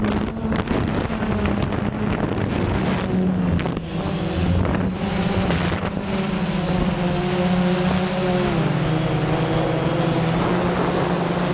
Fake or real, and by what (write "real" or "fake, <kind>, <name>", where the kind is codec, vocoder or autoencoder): real